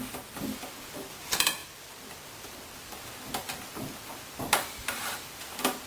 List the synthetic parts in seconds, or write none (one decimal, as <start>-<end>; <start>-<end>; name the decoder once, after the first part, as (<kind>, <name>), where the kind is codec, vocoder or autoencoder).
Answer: none